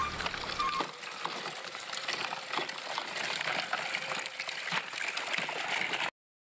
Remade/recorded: recorded